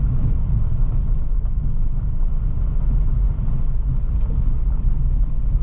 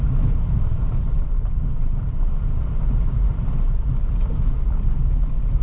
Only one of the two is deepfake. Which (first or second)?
second